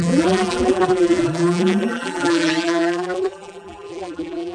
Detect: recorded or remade remade